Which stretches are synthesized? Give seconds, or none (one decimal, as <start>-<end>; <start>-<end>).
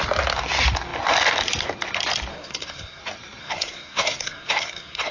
2.3-3.0; 3.4-5.1